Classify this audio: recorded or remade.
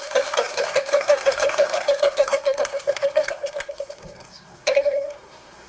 remade